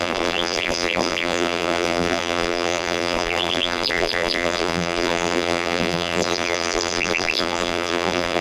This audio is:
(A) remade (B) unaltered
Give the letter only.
A